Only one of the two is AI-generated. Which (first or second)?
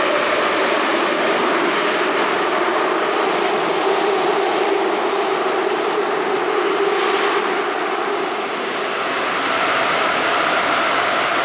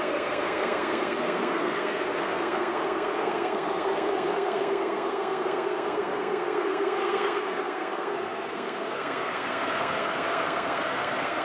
second